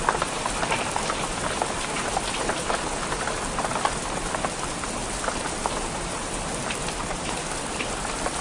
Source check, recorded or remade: remade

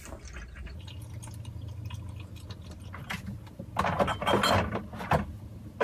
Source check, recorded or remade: recorded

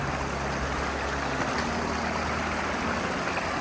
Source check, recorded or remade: recorded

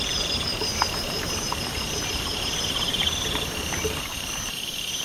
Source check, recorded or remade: remade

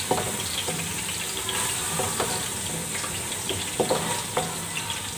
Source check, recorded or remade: recorded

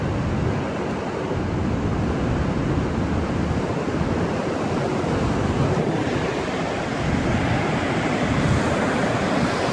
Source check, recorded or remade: recorded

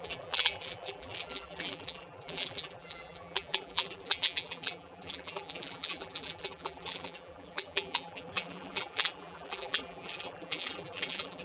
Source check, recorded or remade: remade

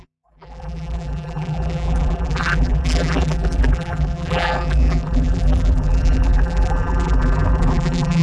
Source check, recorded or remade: remade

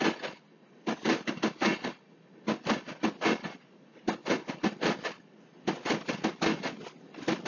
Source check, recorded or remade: recorded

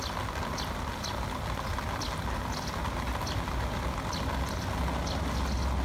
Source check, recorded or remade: recorded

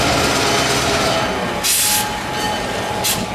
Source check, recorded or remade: recorded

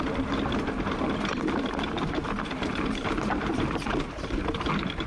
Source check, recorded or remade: remade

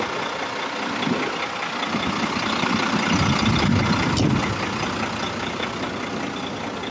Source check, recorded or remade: recorded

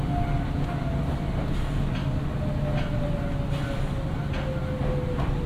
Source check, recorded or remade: recorded